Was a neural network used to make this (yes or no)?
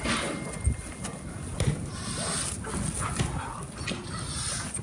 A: no